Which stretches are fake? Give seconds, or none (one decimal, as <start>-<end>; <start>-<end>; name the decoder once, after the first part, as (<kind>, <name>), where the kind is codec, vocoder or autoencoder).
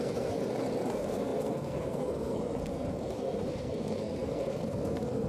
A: 0.0-0.4 (codec, SNAC); 0.9-5.3